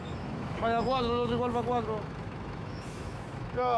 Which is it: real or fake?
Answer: fake